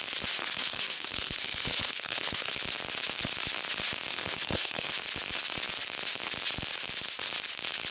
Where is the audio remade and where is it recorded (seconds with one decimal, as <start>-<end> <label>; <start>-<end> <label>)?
0.0-0.4 recorded; 0.4-2.5 remade; 2.5-4.1 recorded; 4.1-4.9 remade; 4.9-7.9 recorded